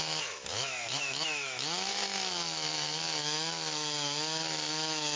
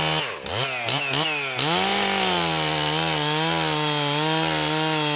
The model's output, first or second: first